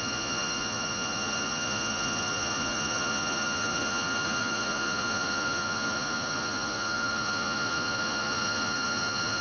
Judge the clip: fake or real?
fake